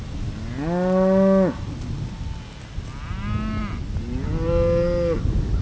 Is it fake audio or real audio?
real